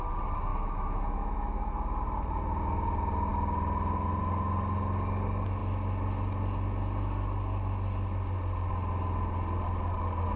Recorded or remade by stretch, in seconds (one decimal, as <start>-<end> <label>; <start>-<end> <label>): 0.0-0.5 recorded; 0.5-1.7 remade; 1.7-10.4 recorded